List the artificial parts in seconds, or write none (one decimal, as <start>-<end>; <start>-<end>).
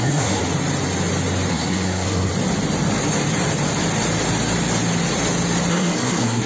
0.0-0.4; 1.5-2.3; 5.7-6.5